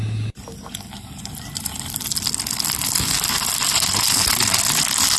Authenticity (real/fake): real